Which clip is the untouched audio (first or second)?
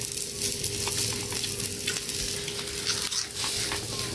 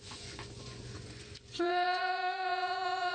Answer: first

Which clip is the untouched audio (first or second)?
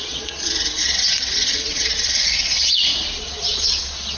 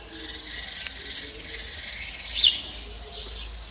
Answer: second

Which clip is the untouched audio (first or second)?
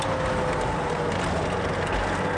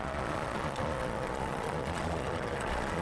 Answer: first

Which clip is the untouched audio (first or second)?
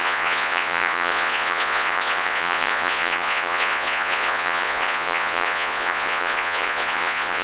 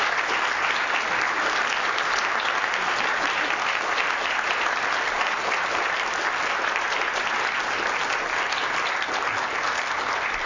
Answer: second